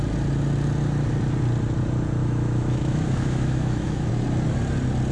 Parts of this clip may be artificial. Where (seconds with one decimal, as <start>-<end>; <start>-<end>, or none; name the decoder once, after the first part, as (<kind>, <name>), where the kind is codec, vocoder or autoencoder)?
2.2-4.1 (autoencoder, DAC-VAE)